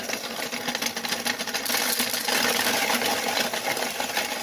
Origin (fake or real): real